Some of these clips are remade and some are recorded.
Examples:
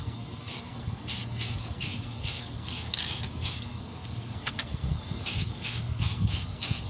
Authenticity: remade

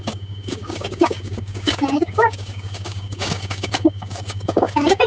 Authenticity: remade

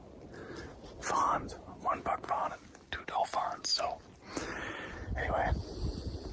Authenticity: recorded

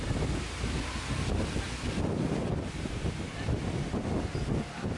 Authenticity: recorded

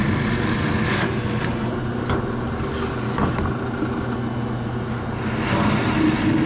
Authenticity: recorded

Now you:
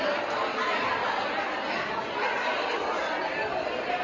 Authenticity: recorded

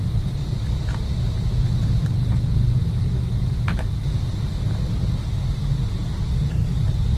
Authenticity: recorded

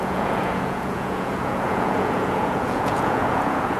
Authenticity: remade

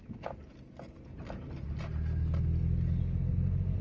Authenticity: recorded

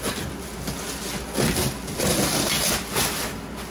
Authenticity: recorded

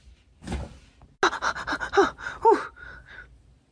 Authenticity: recorded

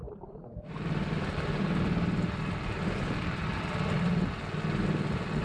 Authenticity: remade